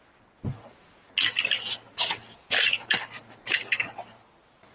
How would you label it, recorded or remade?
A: recorded